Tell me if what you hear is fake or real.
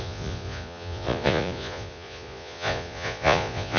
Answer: fake